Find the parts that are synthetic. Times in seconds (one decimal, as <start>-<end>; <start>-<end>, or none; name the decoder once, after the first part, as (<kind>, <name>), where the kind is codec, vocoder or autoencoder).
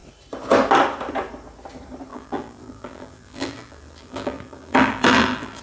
2.1-5.6 (vocoder, BigVGAN v2)